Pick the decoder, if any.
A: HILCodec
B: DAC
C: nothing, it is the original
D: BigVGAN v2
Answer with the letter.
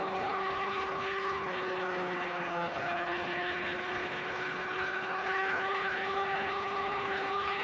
A